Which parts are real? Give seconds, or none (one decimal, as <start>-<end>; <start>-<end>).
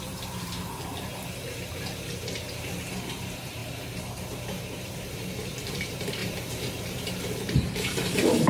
none